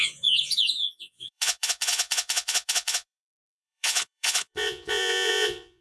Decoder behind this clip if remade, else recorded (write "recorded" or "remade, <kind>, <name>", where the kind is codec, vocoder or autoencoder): remade, vocoder, Vocos